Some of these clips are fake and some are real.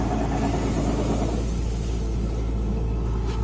real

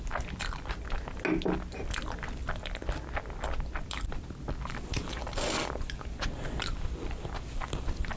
real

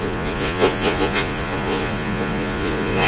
fake